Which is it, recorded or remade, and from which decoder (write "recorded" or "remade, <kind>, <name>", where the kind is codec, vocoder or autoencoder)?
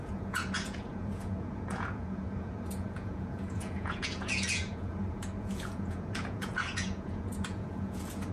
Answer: remade, vocoder, Vocos